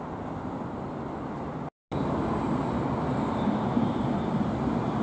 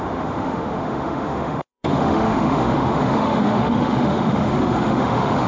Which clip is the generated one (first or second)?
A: second